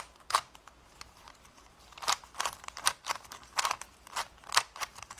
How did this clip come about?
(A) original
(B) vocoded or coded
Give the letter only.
B